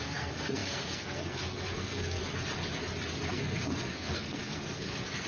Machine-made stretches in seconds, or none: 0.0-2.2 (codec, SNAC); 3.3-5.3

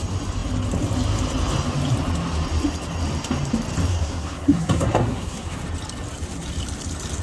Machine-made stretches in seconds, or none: 3.9-5.6 (codec, SNAC)

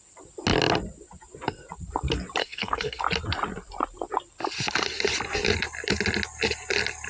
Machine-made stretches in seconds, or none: 2.4-3.0 (codec, SNAC)

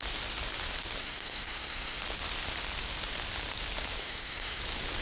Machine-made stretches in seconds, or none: 1.0-2.0 (codec, SNAC); 4.0-4.6

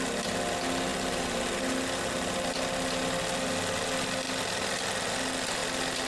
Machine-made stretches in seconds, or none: none

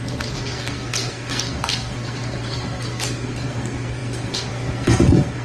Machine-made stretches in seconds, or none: 0.0-5.4 (codec, SNAC)

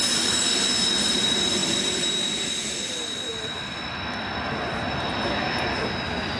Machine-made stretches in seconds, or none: none

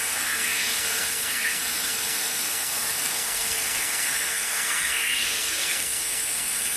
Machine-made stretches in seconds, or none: 0.0-6.8 (codec, SNAC)